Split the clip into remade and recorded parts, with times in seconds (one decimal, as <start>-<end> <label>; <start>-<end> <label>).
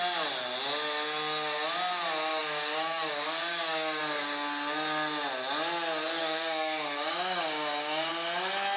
0.0-2.4 recorded; 2.4-4.0 remade; 4.0-6.2 recorded; 6.2-8.1 remade; 8.1-8.8 recorded